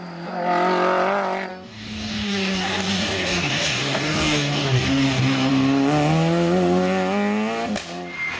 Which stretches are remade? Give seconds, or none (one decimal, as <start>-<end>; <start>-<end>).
1.5-5.5